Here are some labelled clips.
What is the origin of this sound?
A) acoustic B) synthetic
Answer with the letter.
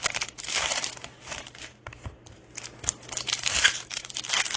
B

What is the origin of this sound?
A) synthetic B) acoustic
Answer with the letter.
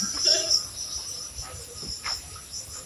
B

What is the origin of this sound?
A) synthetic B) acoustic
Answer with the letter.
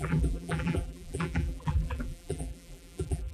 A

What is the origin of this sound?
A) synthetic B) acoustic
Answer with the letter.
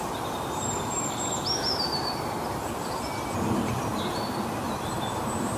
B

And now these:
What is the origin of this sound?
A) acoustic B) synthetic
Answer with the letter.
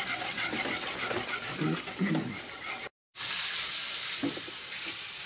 B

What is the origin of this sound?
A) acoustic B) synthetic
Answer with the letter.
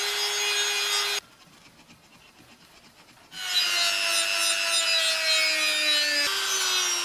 A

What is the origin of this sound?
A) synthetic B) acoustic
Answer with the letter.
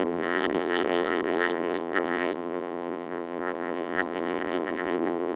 A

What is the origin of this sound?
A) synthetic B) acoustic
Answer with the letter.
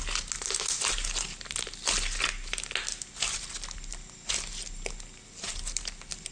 B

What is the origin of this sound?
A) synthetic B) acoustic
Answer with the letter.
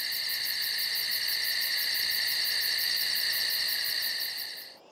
B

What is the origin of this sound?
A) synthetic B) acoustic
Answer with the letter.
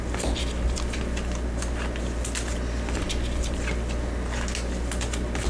B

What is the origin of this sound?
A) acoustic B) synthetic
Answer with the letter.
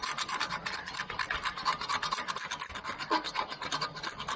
A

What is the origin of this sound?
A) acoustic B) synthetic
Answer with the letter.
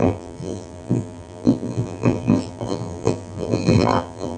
B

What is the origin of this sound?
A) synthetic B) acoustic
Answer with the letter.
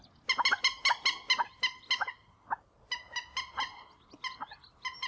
B